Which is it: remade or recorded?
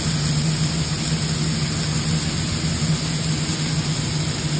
recorded